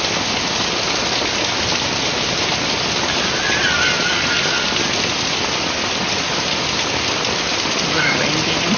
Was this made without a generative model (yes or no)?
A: yes